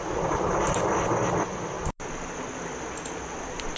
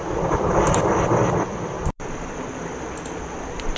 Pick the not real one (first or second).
second